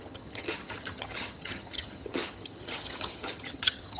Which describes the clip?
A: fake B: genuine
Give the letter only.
A